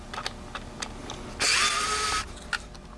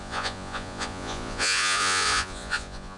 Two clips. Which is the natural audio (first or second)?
first